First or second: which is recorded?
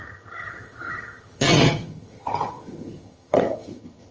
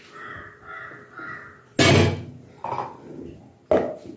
second